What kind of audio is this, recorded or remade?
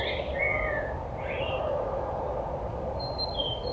recorded